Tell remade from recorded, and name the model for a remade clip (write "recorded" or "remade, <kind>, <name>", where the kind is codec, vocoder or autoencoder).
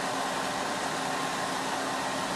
recorded